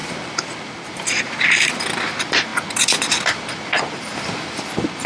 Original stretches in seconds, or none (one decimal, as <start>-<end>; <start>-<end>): none